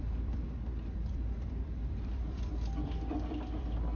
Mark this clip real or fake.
fake